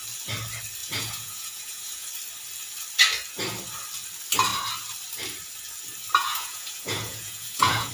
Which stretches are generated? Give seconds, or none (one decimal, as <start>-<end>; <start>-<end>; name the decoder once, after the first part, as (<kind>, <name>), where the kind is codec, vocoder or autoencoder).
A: 0.8-2.1 (vocoder, Vocos); 6.2-7.9